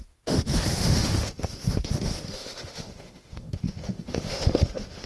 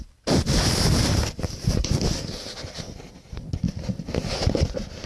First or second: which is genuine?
second